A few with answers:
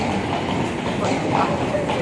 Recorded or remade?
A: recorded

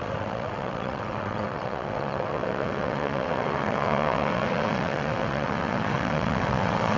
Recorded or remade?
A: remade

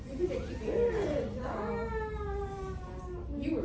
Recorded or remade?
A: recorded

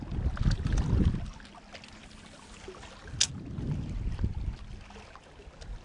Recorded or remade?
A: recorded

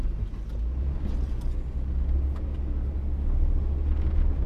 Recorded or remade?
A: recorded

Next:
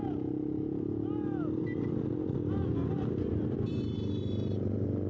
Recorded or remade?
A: recorded